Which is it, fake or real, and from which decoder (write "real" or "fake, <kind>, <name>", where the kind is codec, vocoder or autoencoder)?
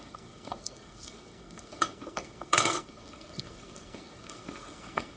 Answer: fake, codec, SNAC